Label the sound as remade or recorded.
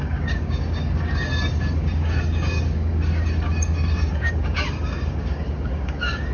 remade